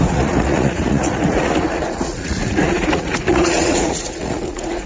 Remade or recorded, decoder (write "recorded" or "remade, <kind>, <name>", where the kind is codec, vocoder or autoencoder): remade, vocoder, Vocos